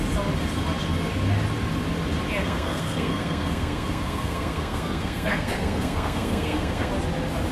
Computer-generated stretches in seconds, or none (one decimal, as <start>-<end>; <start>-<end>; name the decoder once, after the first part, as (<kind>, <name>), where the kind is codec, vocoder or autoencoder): 2.4-6.9 (codec, SNAC)